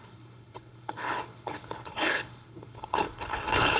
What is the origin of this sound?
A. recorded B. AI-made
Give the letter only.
B